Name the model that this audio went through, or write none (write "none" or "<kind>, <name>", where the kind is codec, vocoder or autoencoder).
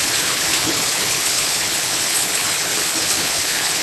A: codec, HILCodec